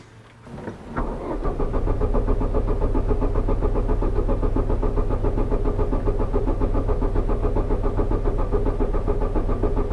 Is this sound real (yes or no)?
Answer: yes